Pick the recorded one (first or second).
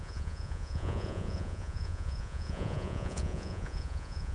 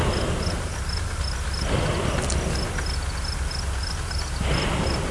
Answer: second